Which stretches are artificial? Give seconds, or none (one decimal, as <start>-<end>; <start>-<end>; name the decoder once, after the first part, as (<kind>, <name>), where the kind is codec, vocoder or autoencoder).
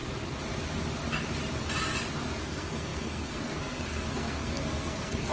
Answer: 2.4-5.3 (codec, SNAC)